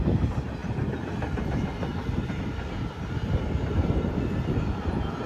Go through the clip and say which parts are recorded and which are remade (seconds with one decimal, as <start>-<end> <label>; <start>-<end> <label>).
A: 0.0-5.3 recorded